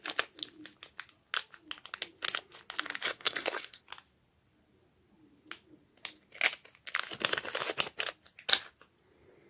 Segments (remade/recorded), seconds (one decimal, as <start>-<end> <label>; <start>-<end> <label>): 0.0-3.1 recorded; 3.1-3.8 remade; 3.8-9.5 recorded